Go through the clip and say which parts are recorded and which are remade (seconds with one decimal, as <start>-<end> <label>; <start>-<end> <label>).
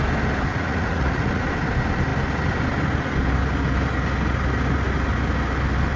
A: 0.0-0.5 recorded; 0.5-1.5 remade; 1.5-6.0 recorded